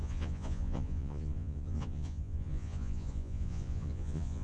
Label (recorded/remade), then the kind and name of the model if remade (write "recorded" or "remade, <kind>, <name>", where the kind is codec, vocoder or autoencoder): remade, vocoder, Vocos